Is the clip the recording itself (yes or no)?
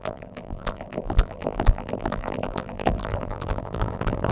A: no